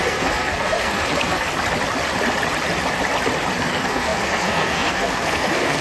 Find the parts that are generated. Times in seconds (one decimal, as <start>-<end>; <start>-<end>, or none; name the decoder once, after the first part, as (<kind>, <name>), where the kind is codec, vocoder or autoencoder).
0.0-1.5 (codec, SNAC); 3.6-5.8